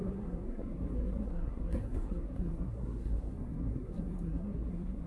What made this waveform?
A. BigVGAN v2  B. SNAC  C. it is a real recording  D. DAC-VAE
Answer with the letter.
B